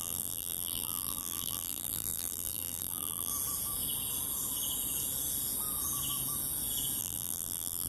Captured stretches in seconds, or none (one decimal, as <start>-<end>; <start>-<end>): 3.3-7.0